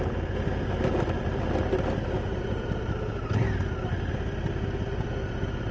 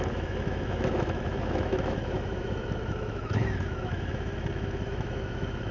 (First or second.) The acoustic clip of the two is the first